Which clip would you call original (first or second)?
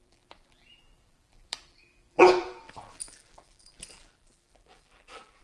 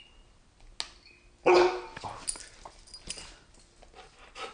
second